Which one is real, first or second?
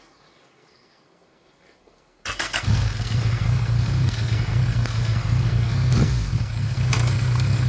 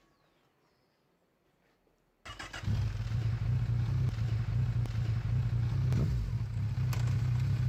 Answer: second